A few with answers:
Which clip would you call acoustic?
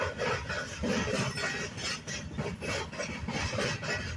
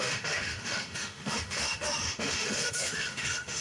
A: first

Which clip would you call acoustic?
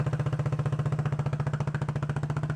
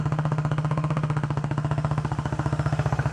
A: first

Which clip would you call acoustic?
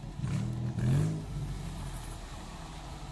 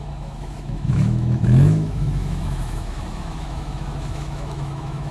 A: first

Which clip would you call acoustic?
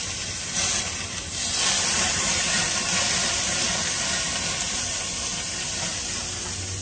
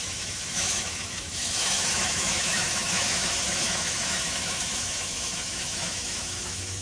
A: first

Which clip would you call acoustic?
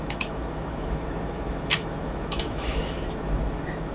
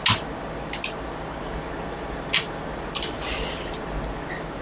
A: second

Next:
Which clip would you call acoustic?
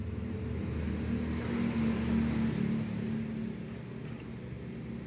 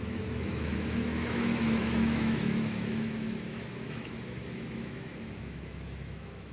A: first